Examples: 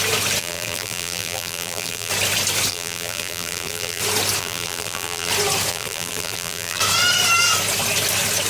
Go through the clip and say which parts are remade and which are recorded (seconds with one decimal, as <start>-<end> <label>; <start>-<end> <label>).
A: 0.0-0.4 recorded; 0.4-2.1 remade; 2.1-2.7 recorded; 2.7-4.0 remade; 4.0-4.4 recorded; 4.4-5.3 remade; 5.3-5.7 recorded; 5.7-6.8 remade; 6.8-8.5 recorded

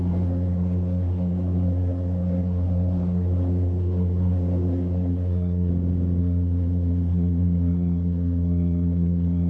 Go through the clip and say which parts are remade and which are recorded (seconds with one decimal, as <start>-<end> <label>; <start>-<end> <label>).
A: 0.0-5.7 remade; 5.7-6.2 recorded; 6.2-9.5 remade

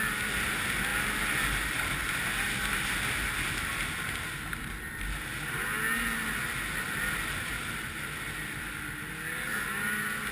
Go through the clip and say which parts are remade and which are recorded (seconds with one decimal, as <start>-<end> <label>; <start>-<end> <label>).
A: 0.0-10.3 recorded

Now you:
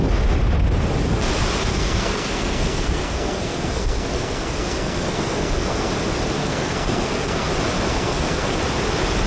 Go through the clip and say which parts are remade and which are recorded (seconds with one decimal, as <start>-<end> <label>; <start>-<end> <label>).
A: 0.0-1.7 recorded; 1.7-5.9 remade; 5.9-6.4 recorded; 6.4-7.5 remade; 7.5-7.9 recorded; 7.9-8.6 remade; 8.6-9.3 recorded

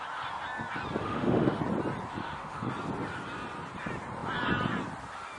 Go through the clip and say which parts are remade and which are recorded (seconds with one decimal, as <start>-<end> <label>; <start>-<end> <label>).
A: 0.0-1.0 recorded; 1.0-1.6 remade; 1.6-2.2 recorded; 2.2-2.7 remade; 2.7-5.4 recorded

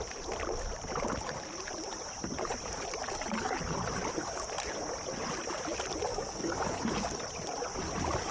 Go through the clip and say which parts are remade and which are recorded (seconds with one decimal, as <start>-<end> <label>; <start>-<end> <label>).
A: 0.0-6.1 recorded; 6.1-6.8 remade; 6.8-8.3 recorded

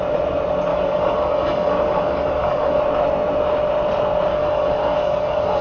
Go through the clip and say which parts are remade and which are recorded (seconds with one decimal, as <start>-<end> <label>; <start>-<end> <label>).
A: 0.0-0.7 recorded; 0.7-2.8 remade; 2.8-4.3 recorded; 4.3-5.6 remade

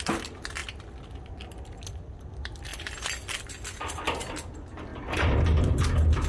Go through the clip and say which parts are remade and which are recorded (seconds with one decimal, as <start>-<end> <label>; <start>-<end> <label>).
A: 0.0-6.3 recorded